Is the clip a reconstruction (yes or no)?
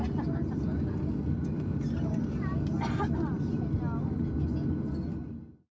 no